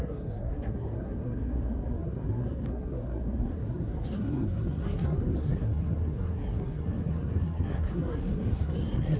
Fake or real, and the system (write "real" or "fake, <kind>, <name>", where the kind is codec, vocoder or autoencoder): fake, codec, SNAC